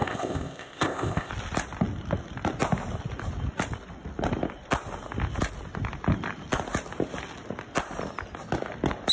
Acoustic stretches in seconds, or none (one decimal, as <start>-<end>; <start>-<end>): 1.3-9.1

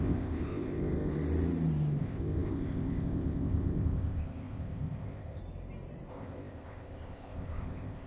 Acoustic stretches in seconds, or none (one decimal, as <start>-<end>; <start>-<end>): 1.1-2.0; 5.4-6.1

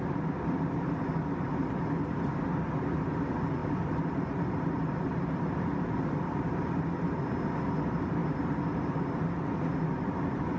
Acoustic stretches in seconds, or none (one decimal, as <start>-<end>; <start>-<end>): 0.0-10.6

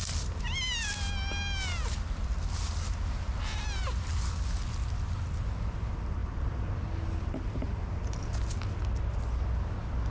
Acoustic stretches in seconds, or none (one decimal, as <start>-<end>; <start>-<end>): 0.0-10.1

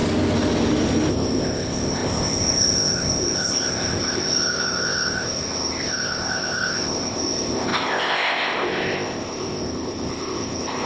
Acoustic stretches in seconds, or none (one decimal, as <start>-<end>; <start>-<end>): 0.0-1.1